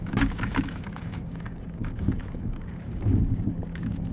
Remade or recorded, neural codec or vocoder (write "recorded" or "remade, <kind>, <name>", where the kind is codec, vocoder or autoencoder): remade, codec, DAC